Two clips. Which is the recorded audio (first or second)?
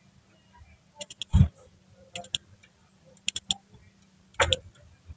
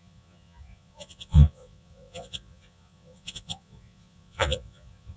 first